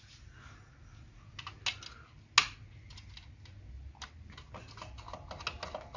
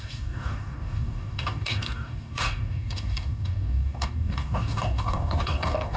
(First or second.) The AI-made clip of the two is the second